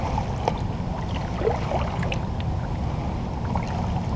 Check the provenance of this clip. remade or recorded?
recorded